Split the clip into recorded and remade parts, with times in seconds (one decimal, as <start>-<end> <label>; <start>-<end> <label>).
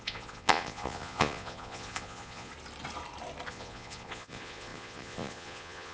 0.0-2.5 remade; 2.5-3.5 recorded; 3.5-5.9 remade